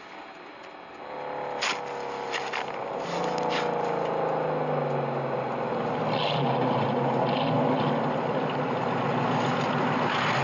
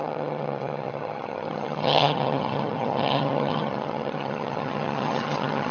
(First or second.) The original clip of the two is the first